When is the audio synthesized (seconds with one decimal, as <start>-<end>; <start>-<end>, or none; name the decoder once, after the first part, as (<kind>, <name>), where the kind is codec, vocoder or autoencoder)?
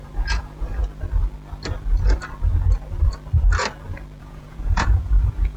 0.0-0.8 (vocoder, Vocos); 4.2-5.6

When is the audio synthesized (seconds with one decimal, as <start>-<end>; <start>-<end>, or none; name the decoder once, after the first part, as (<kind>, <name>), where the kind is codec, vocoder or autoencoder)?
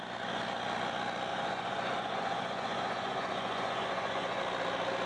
1.3-4.4 (vocoder, Vocos)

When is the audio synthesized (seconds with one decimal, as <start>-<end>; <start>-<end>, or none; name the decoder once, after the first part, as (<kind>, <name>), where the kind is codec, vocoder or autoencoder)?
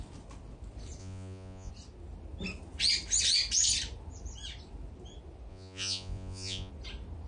1.0-1.7 (vocoder, Vocos); 5.5-6.7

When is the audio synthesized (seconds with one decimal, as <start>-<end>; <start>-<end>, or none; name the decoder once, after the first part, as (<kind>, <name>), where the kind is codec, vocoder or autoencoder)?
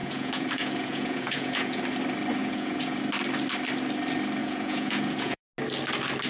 0.0-1.8 (vocoder, Vocos); 2.4-3.0; 4.4-5.4